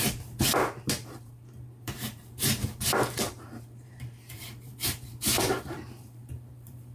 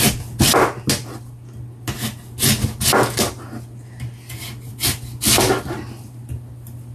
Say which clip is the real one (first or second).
second